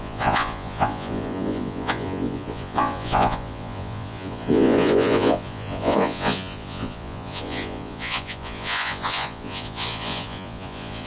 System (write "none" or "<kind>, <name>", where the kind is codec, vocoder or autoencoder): vocoder, Vocos